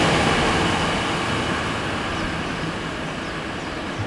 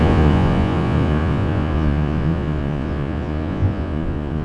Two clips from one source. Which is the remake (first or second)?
second